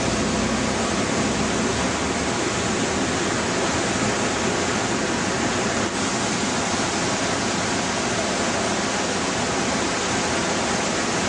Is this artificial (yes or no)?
no